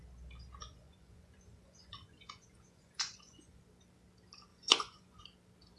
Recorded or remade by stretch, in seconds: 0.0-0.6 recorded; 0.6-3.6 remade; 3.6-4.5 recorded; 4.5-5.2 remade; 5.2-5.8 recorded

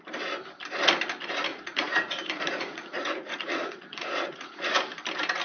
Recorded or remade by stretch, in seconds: 0.0-1.5 recorded; 1.5-4.7 remade; 4.7-5.4 recorded

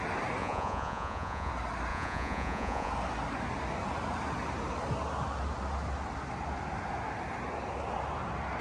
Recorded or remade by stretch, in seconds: 0.0-0.4 recorded; 0.4-1.5 remade; 1.5-1.9 recorded; 1.9-2.9 remade; 2.9-8.6 recorded

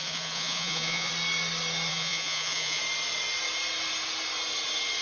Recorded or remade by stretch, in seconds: 0.0-1.1 remade; 1.1-1.9 recorded; 1.9-2.8 remade; 2.8-5.0 recorded